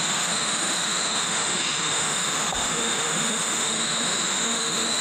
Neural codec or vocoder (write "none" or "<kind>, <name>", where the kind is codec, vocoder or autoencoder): autoencoder, DAC-VAE